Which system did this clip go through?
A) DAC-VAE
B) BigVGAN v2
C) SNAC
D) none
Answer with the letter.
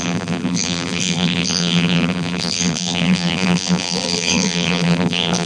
B